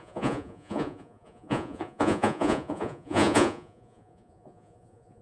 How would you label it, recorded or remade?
remade